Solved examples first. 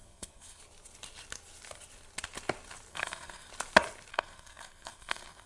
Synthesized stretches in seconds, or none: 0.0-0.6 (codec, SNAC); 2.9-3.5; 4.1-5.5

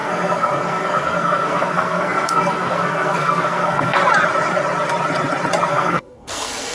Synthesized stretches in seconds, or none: 0.0-4.0 (codec, SNAC); 5.7-6.7

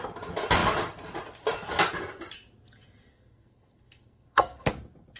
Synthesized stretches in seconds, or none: 3.1-4.7 (codec, SNAC)

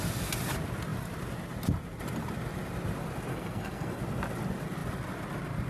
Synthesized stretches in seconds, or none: 3.3-4.0 (codec, SNAC)

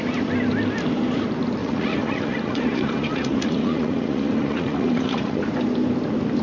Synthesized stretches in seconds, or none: 1.6-5.4 (vocoder, Vocos)

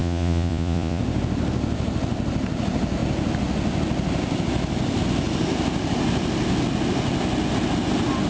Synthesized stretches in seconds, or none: 0.0-1.0 (vocoder, Vocos)